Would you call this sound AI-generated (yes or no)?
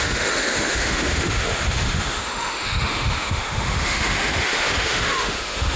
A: yes